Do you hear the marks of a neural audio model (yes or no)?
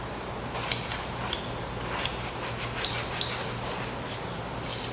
yes